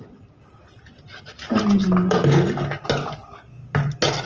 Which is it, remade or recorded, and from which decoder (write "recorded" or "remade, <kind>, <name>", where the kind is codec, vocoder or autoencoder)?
recorded